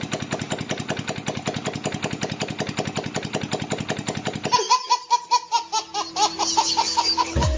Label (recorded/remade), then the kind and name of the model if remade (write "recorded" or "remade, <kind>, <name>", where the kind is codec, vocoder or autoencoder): recorded